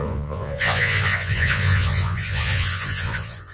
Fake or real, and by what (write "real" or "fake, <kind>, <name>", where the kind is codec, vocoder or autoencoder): fake, vocoder, Vocos